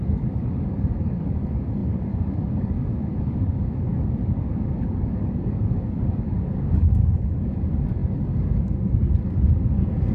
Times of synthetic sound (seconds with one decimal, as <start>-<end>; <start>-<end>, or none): 0.0-10.1